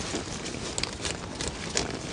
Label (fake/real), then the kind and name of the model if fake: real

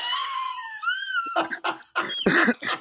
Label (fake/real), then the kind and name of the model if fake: real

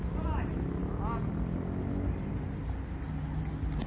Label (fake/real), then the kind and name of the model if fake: real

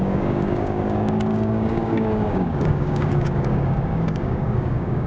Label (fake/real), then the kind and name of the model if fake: fake, codec, DAC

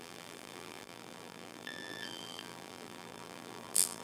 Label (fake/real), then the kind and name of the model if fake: fake, vocoder, BigVGAN v2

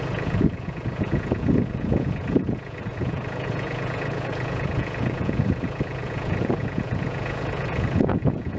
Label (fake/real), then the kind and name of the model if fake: fake, vocoder, Vocos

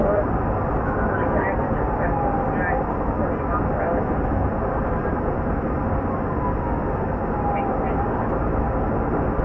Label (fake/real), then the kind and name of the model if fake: real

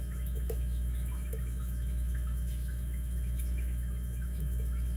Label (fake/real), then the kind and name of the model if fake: fake, autoencoder, DAC-VAE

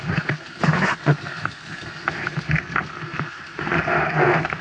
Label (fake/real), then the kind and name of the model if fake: fake, codec, SNAC